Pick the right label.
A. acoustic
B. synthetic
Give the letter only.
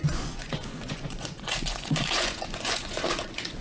B